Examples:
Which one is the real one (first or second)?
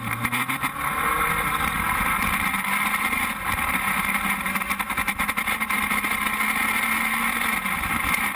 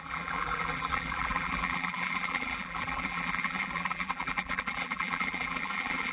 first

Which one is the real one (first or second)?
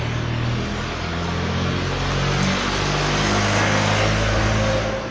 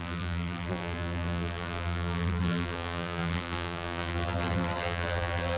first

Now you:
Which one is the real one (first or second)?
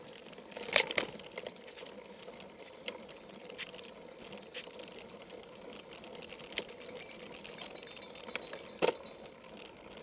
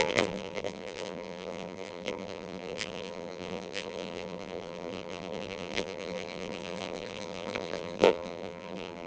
first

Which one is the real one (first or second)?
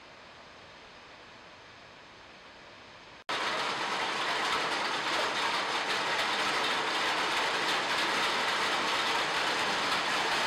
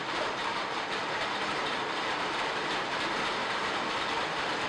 first